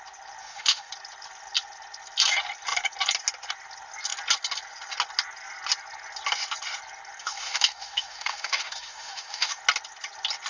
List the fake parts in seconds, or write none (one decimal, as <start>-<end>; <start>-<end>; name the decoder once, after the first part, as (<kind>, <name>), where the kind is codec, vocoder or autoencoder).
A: 0.4-0.9 (autoencoder, DAC-VAE); 7.2-9.6

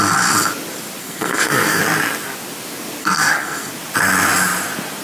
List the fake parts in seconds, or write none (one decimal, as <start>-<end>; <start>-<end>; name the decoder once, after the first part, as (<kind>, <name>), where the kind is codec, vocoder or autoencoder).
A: 1.0-1.8 (codec, SNAC); 3.0-3.7

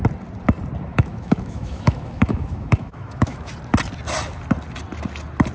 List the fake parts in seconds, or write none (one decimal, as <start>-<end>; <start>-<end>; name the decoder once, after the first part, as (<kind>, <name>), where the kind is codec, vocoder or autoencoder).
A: 0.9-3.5 (autoencoder, DAC-VAE)

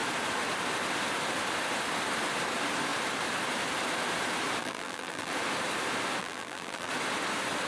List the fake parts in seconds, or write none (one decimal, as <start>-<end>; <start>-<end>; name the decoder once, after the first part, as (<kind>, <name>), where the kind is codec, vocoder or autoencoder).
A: 4.6-5.3 (vocoder, BigVGAN v2); 6.2-6.9

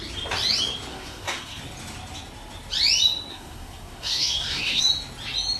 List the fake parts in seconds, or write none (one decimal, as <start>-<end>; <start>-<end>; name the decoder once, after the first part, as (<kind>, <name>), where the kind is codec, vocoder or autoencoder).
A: 0.9-1.6 (codec, SNAC); 3.3-4.8

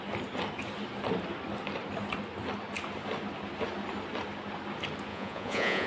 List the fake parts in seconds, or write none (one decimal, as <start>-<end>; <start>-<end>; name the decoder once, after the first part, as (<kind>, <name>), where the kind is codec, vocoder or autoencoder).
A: 5.1-5.9 (vocoder, Vocos)